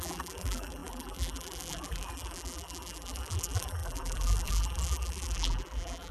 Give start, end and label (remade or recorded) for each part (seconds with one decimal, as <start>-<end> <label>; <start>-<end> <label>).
0.0-6.1 remade